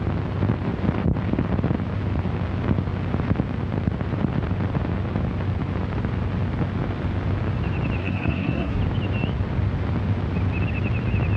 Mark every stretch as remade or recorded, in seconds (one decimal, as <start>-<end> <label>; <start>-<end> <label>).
0.0-8.0 recorded; 8.0-8.8 remade; 8.8-11.4 recorded